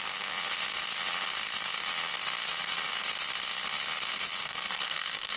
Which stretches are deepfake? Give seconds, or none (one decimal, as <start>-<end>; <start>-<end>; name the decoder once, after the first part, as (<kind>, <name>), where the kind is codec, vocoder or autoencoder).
4.4-5.4 (codec, SNAC)